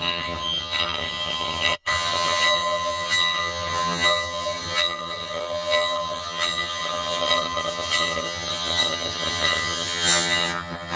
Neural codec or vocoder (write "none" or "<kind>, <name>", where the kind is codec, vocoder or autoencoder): vocoder, HiFi-GAN